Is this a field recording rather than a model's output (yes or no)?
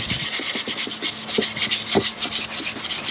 yes